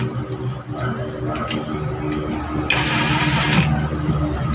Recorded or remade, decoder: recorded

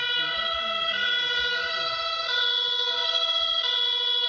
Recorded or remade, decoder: recorded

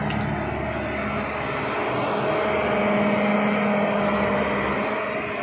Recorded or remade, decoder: recorded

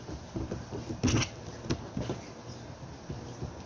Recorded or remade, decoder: recorded